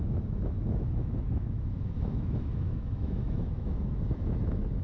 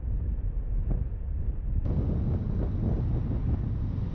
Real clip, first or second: second